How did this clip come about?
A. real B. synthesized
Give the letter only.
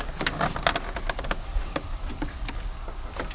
A